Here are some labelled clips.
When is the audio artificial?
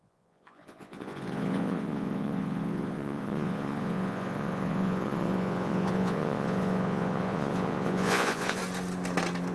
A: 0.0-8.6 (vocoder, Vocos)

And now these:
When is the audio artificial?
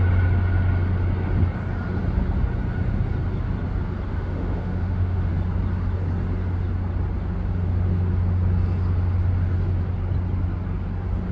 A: 4.1-5.3 (autoencoder, DAC-VAE)